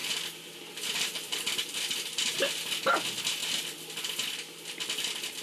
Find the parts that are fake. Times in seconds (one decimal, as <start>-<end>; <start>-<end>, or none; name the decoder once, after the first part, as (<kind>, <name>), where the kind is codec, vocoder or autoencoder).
0.0-1.9 (vocoder, BigVGAN v2); 3.4-4.0